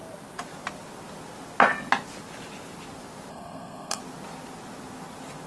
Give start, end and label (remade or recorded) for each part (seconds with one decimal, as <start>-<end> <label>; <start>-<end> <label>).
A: 0.0-3.3 recorded; 3.3-4.0 remade; 4.0-5.5 recorded